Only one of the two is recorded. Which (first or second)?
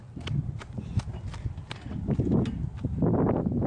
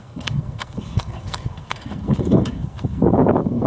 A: first